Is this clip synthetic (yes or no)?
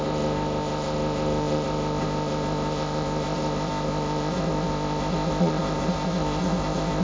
yes